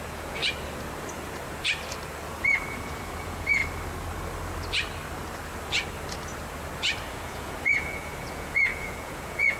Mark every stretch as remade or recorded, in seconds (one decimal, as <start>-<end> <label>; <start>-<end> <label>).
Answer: 0.0-0.4 remade; 0.4-2.7 recorded; 2.7-3.6 remade; 3.6-7.1 recorded; 7.1-9.6 remade